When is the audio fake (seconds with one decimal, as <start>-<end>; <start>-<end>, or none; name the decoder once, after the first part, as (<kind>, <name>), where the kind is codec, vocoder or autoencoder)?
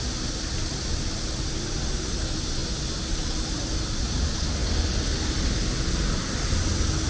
none